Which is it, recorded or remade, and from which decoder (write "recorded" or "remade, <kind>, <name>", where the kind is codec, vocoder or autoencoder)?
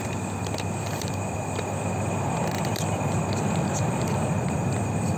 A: recorded